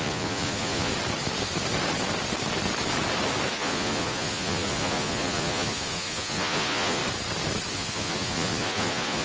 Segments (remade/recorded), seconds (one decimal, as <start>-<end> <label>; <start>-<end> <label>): 0.0-0.9 remade; 0.9-3.5 recorded; 3.5-7.0 remade; 7.0-7.7 recorded; 7.7-9.2 remade